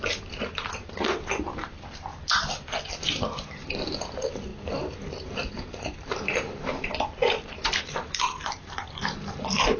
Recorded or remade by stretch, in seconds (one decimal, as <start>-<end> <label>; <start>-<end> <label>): 0.0-2.1 remade; 2.1-2.9 recorded; 2.9-9.8 remade